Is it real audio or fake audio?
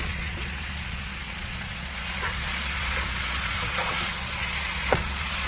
fake